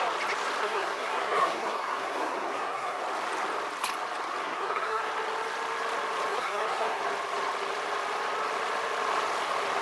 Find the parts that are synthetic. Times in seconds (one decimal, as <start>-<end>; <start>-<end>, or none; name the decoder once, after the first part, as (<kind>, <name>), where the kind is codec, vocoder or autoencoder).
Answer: 0.6-3.0 (codec, SNAC); 4.4-5.0; 6.3-7.0